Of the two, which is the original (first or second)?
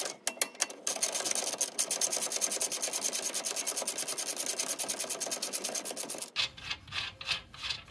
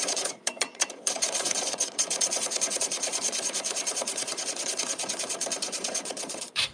first